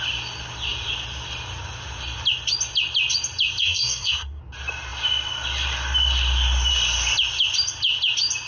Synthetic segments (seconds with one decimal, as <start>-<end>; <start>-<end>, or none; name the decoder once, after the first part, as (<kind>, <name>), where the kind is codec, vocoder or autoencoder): 3.6-4.4 (codec, SNAC)